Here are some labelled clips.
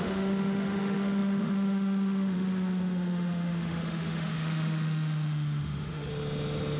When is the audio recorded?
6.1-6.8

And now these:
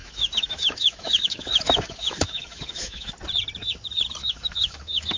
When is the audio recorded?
3.1-4.2

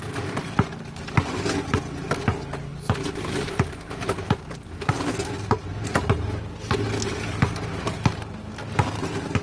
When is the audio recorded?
0.0-9.4